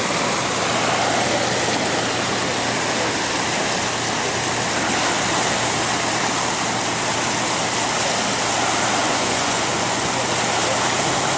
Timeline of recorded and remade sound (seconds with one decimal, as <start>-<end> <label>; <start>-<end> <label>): 0.0-9.0 recorded; 9.0-10.3 remade; 10.3-11.4 recorded